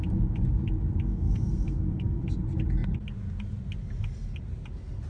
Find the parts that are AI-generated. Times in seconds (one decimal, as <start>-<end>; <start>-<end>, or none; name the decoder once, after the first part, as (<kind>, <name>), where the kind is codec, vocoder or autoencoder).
1.1-2.2 (codec, SNAC)